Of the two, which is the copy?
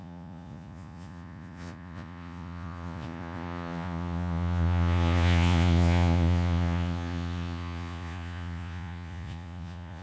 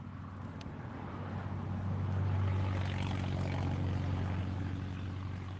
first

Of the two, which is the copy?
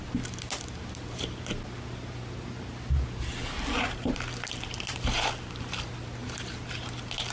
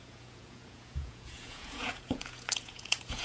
second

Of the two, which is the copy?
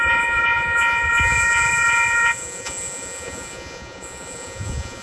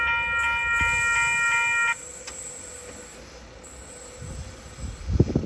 first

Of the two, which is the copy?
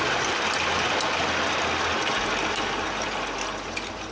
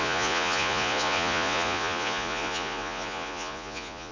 second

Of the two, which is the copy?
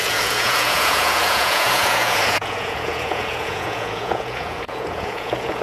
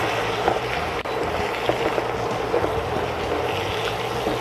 first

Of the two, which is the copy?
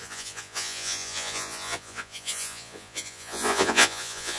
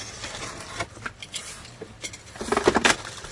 first